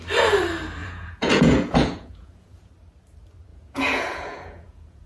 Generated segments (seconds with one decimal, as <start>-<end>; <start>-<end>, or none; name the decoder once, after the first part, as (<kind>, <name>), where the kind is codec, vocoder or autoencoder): 0.8-2.7 (vocoder, Vocos); 3.5-5.1